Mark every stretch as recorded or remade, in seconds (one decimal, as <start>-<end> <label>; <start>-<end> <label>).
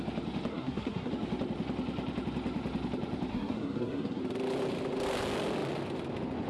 0.0-0.5 recorded; 0.5-1.1 remade; 1.1-3.3 recorded; 3.3-4.2 remade; 4.2-6.5 recorded